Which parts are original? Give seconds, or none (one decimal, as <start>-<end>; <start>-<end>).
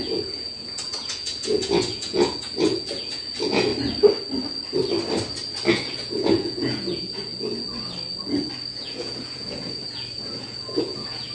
3.7-5.7; 7.3-8.7